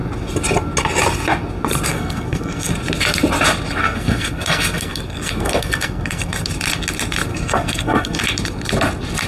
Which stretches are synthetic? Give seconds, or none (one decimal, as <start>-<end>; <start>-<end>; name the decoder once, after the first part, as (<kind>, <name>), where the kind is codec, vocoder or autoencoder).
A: 1.9-2.7 (codec, SNAC); 3.8-6.5; 7.3-8.2